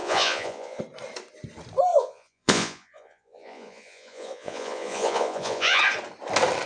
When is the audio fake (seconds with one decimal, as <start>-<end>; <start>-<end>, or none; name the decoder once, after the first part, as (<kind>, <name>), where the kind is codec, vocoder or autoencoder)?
0.0-0.8 (vocoder, Vocos); 1.9-5.8